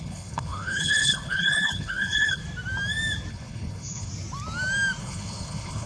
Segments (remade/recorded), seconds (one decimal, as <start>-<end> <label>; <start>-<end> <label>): 0.0-2.4 remade; 2.4-3.3 recorded; 3.3-4.1 remade; 4.1-5.0 recorded; 5.0-5.9 remade